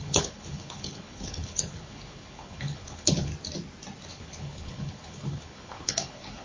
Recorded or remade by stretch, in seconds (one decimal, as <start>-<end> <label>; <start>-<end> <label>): 0.0-3.3 remade; 3.3-4.1 recorded; 4.1-6.4 remade